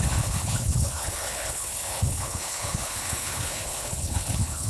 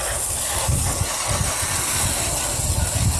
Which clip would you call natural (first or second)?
second